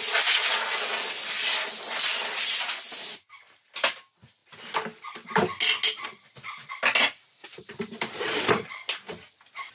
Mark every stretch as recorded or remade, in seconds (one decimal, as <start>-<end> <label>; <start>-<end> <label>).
0.0-7.4 recorded; 7.4-8.5 remade; 8.5-9.7 recorded